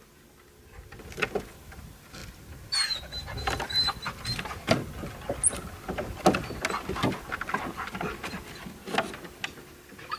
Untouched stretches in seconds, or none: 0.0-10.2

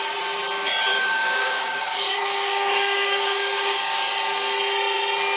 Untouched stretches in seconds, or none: 0.0-0.9; 4.1-5.4